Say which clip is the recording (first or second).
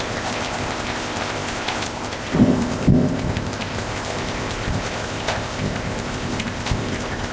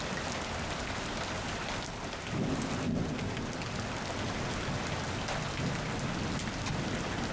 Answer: second